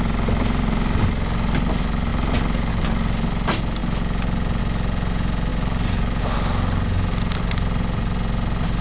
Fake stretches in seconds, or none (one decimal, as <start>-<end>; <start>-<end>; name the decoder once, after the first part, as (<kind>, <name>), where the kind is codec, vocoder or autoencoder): none